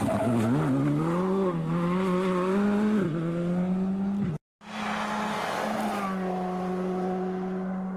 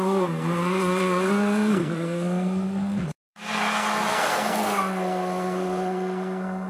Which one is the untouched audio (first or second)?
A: first